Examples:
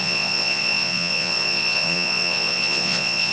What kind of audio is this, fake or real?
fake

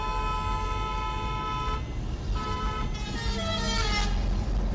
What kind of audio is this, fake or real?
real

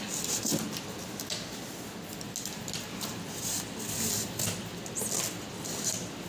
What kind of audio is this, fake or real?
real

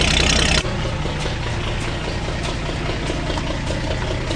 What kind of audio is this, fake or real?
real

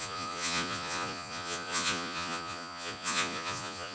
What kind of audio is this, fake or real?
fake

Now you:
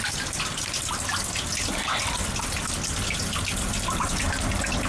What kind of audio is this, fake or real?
real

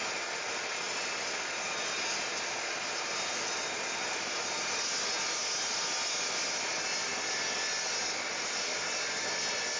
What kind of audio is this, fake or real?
real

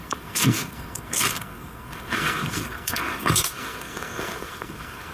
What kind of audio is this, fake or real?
fake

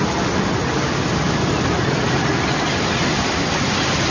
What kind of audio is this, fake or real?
real